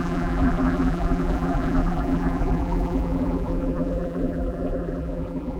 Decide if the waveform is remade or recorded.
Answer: remade